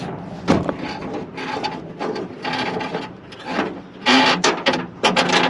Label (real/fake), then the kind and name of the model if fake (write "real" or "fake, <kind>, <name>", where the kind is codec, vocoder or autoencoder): real